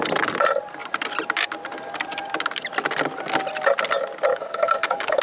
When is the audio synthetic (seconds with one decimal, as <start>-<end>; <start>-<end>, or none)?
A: 4.3-5.2

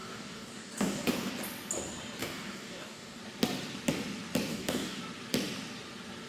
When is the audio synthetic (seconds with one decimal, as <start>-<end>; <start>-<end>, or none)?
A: 0.0-1.3; 2.2-3.2; 4.5-5.0

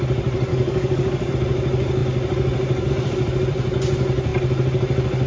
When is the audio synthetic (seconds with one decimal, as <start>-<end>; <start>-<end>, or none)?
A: 0.5-1.3

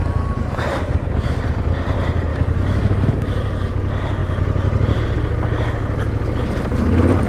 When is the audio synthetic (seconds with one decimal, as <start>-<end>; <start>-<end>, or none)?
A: 0.7-1.4; 2.3-3.7

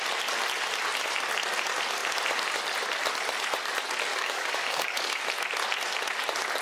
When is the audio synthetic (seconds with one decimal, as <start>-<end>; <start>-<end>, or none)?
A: 4.1-5.2